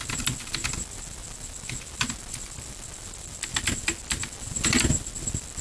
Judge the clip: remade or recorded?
recorded